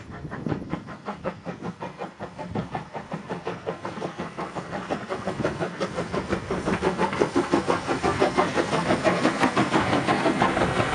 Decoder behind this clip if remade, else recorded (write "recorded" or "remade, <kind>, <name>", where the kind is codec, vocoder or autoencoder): remade, codec, SNAC